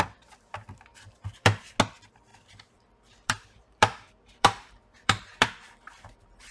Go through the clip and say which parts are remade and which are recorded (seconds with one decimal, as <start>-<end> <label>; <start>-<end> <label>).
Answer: 0.0-0.9 recorded; 0.9-1.7 remade; 1.7-2.3 recorded; 2.3-6.5 remade